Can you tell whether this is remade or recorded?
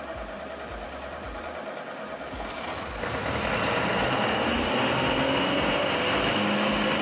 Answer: recorded